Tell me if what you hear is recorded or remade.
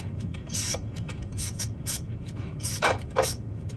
remade